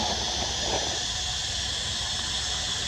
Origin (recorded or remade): recorded